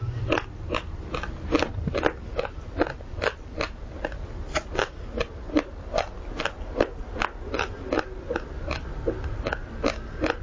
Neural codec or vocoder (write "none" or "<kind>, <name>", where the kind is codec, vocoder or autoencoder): none